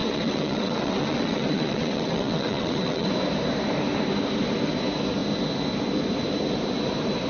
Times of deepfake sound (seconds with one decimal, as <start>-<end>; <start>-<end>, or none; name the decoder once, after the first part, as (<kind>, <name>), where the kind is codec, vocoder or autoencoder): 0.0-3.1 (vocoder, WaveNeXt)